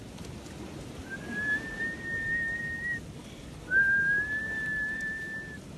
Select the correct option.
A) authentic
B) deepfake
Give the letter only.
A